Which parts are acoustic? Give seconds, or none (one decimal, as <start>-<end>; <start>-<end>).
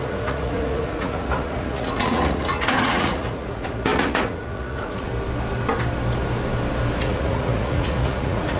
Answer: 5.1-7.0